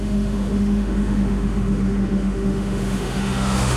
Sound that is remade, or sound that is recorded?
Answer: remade